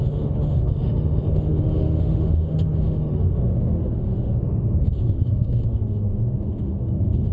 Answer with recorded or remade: remade